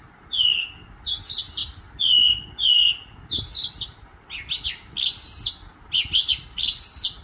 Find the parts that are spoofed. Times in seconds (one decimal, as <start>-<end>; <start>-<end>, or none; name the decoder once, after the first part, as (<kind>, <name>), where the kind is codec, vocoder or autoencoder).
none